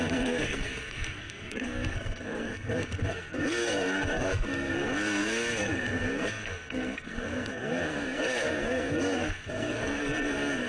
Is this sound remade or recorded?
remade